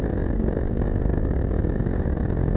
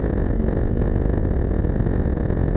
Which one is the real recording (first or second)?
second